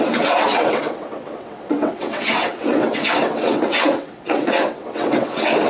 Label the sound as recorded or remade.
remade